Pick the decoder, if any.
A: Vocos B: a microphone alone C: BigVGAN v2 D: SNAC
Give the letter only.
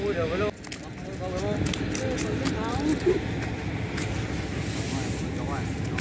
B